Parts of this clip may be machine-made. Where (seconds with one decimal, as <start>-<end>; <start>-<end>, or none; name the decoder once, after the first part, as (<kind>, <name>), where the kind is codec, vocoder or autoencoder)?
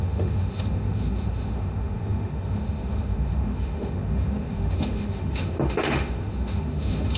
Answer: 0.0-7.2 (autoencoder, DAC-VAE)